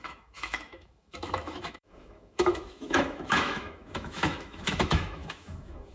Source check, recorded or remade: remade